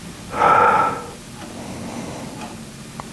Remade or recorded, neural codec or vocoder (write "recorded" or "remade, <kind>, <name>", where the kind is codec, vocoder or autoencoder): recorded